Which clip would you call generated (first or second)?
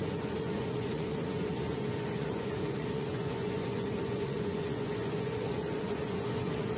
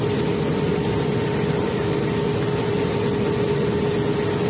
first